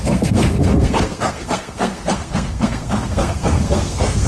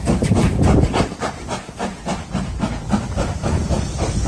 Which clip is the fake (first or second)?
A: first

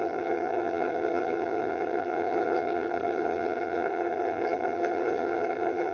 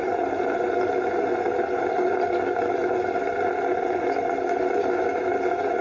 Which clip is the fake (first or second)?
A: first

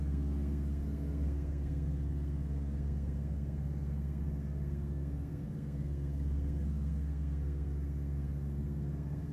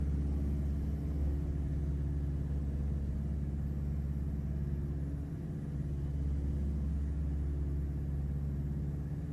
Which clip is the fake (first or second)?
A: first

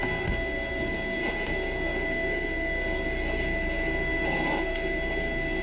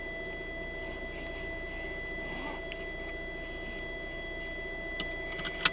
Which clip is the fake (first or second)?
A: first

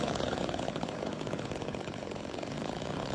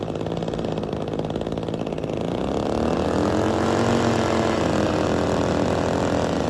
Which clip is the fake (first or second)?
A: first